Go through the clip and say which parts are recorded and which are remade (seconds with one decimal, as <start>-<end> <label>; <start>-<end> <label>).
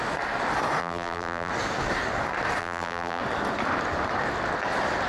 0.0-0.8 recorded; 0.8-1.5 remade; 1.5-2.6 recorded; 2.6-3.2 remade; 3.2-5.1 recorded